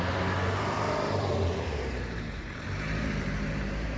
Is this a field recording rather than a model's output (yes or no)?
no